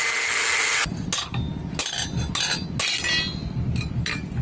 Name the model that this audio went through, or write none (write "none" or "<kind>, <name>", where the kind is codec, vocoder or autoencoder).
none